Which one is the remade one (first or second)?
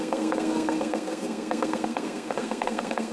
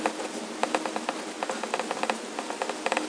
first